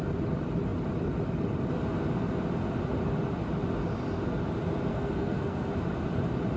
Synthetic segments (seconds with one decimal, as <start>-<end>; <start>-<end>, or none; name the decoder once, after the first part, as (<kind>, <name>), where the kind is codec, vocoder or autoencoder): 4.9-5.7 (codec, SNAC)